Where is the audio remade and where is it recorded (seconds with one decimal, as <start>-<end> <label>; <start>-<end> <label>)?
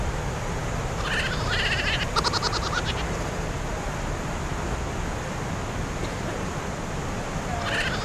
0.0-8.0 recorded